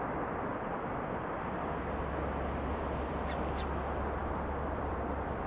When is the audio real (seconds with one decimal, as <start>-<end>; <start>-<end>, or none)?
0.0-4.2; 5.0-5.5